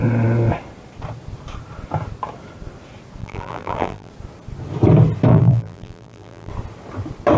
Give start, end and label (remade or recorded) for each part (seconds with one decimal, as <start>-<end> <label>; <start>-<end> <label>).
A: 0.0-3.2 recorded; 3.2-4.1 remade; 4.1-5.3 recorded; 5.3-6.5 remade; 6.5-7.4 recorded